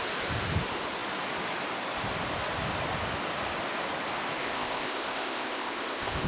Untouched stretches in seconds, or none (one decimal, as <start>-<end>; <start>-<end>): 0.0-4.4